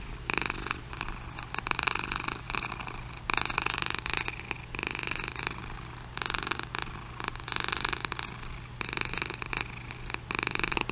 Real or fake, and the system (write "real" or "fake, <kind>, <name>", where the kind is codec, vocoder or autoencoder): real